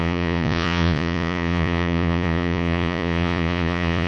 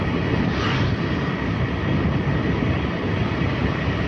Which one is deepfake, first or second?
first